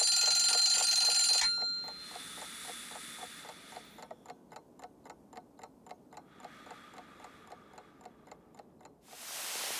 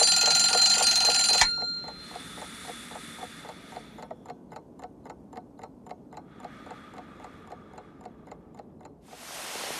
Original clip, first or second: first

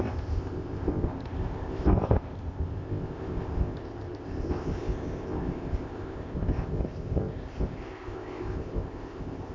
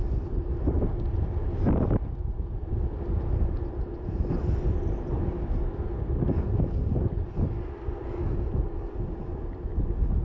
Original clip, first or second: second